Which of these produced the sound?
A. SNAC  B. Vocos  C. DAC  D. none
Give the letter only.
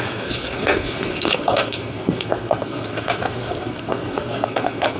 A